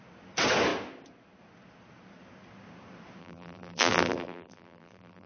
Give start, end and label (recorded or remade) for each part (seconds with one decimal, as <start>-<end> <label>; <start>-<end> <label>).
0.0-3.2 recorded; 3.2-5.3 remade